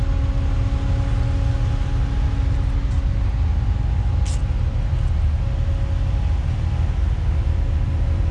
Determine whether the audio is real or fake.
real